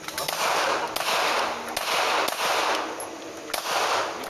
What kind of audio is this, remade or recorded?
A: recorded